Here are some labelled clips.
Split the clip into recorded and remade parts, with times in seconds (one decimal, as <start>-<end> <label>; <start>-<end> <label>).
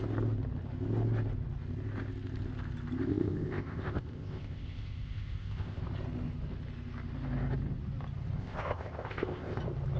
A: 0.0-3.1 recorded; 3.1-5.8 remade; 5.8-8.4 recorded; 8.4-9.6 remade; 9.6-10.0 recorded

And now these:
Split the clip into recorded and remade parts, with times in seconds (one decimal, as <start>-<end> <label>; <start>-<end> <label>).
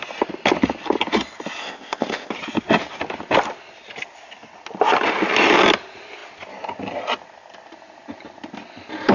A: 0.0-1.6 recorded; 1.6-2.3 remade; 2.3-9.1 recorded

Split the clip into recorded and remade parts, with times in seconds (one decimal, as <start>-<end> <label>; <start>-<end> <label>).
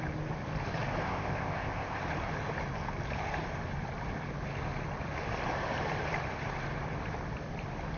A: 0.0-1.0 recorded; 1.0-2.0 remade; 2.0-8.0 recorded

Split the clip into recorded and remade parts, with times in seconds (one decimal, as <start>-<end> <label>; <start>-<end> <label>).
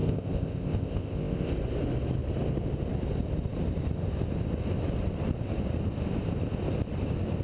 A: 0.0-1.5 remade; 1.5-7.4 recorded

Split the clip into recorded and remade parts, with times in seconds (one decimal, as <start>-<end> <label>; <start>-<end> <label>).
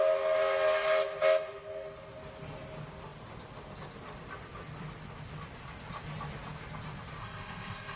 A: 0.0-7.2 recorded; 7.2-8.0 remade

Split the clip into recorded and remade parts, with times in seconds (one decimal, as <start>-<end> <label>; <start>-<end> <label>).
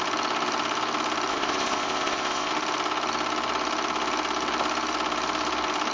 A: 0.0-1.3 recorded; 1.3-2.5 remade; 2.5-5.9 recorded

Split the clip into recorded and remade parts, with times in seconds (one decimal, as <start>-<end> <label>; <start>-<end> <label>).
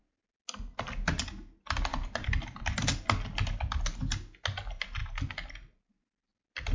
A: 0.0-6.7 recorded